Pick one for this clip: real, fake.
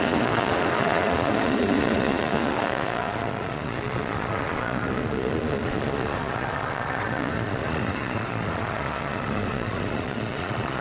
fake